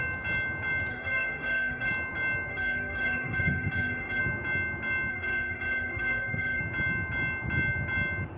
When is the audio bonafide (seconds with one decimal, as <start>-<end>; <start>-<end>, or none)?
0.0-0.9; 1.9-2.5; 4.2-5.1; 6.6-8.4

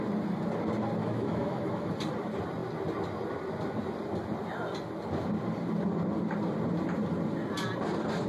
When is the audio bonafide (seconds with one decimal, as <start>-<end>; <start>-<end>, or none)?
0.0-1.0; 1.9-8.3

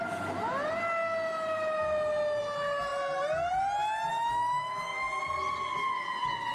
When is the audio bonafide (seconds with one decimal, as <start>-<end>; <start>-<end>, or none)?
0.0-4.1; 5.2-6.5

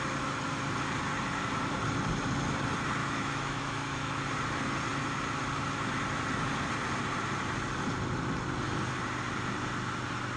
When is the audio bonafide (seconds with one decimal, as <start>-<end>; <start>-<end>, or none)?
0.0-3.0; 4.2-10.4